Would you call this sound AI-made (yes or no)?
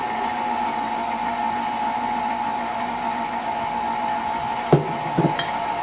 no